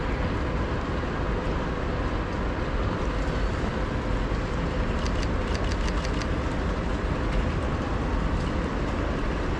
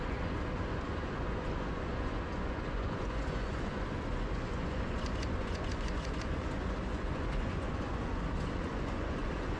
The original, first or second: first